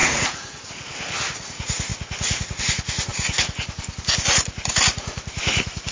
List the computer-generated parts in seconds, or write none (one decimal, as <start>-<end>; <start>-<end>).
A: 0.0-0.7